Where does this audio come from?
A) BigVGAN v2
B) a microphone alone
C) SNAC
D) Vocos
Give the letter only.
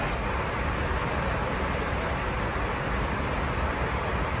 B